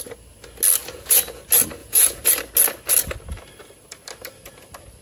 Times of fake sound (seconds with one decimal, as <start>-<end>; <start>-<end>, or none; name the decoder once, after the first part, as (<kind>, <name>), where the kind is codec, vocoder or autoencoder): 0.8-1.4 (vocoder, Vocos); 1.8-2.3